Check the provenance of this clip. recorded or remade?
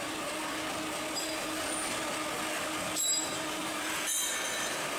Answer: recorded